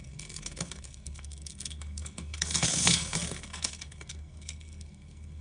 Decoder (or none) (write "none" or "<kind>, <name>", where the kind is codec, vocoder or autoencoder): codec, SNAC